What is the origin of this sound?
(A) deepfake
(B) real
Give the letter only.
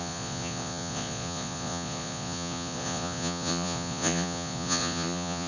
A